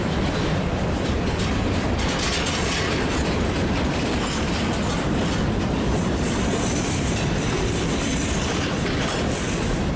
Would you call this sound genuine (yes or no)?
no